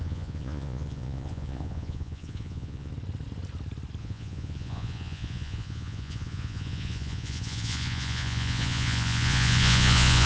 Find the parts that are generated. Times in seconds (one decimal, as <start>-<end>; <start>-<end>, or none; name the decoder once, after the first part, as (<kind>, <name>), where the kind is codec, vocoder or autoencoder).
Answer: 0.0-2.9 (vocoder, Vocos); 4.0-10.3

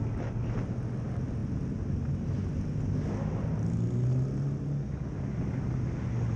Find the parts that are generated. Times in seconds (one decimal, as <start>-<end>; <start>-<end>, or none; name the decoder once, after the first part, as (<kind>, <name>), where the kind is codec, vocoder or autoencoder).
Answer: none

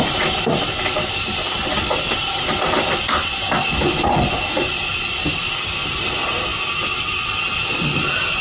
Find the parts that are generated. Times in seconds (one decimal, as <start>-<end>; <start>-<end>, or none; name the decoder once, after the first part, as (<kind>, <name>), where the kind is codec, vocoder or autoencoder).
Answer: none